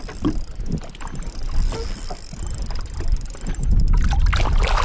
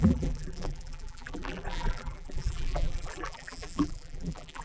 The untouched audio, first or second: first